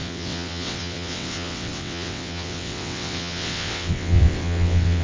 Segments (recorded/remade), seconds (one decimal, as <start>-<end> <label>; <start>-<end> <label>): 0.0-5.0 remade